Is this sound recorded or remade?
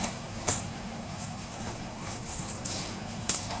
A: remade